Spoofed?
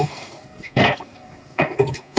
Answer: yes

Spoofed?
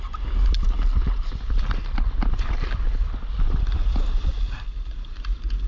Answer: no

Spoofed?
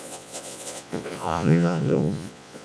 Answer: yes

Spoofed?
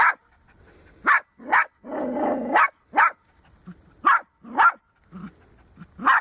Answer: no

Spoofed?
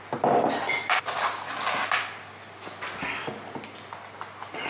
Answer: no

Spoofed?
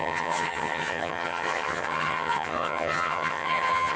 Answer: yes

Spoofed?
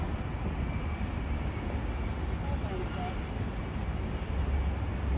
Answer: no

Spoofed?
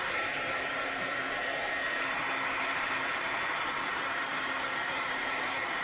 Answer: yes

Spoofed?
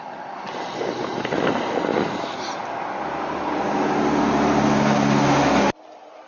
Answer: no